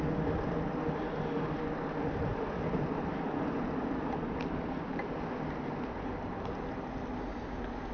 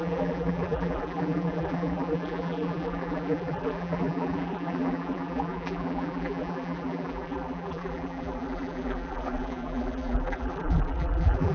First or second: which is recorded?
first